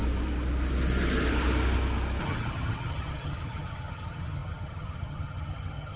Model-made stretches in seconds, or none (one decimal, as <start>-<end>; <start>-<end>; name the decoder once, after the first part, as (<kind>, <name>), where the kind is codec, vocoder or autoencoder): 2.2-6.0 (vocoder, HiFi-GAN)